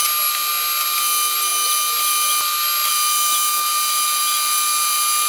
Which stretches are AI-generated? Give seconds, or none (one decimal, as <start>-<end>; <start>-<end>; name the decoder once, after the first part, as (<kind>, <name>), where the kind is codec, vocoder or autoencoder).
none